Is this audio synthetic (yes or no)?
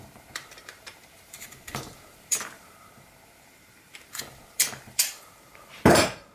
yes